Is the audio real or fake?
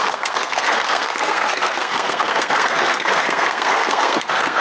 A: fake